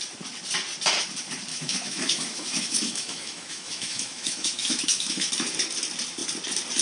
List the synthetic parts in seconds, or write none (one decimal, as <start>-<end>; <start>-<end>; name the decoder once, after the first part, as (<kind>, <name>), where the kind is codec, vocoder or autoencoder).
1.5-5.3 (autoencoder, DAC-VAE)